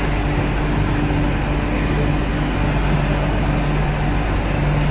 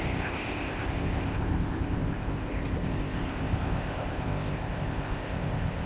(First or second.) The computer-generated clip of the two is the second